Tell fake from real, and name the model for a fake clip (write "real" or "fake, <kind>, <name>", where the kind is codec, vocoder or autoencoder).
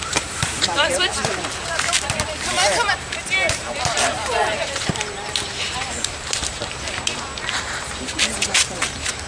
fake, vocoder, BigVGAN v2